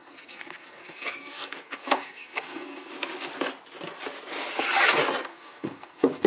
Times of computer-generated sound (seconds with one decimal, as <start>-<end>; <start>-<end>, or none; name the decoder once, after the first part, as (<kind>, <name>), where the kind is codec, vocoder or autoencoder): 0.0-2.9 (codec, SNAC); 5.3-6.3